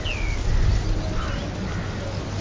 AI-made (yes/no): no